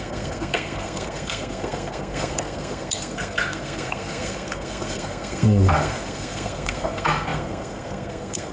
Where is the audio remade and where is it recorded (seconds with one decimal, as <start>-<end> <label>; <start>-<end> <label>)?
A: 0.0-8.5 remade